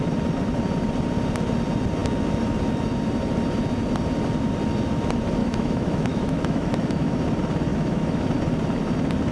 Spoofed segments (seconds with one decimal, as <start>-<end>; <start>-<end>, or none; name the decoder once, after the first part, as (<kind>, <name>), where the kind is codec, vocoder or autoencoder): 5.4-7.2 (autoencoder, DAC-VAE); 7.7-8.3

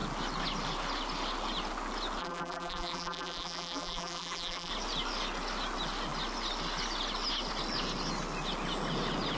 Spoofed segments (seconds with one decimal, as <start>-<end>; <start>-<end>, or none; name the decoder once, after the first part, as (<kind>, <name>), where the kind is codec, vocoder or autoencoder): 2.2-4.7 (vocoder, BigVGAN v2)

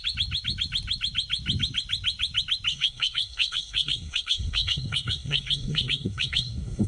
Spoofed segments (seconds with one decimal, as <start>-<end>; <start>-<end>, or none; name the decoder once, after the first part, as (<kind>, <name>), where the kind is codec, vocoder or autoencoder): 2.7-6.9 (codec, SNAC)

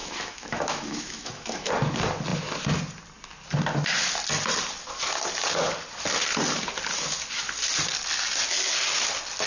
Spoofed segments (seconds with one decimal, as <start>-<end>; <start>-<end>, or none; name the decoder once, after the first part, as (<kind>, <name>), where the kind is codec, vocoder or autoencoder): 0.0-1.7 (autoencoder, DAC-VAE)